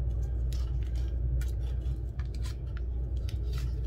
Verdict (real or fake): real